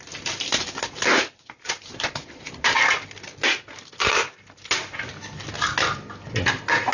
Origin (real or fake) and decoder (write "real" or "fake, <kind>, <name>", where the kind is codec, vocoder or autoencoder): real